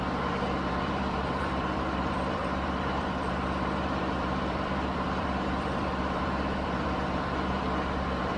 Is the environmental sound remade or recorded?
remade